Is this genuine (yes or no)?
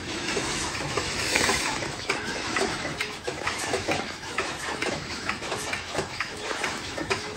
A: no